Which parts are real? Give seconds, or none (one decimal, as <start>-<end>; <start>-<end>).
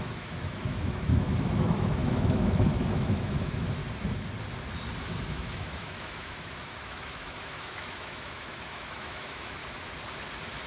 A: 3.8-5.0; 9.6-10.7